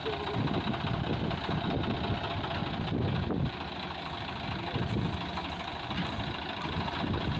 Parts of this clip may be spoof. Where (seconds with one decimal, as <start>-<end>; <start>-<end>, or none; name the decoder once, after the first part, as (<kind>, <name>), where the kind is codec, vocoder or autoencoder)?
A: none